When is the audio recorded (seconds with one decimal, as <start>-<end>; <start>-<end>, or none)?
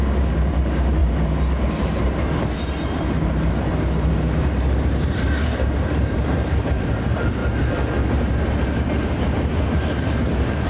7.4-8.5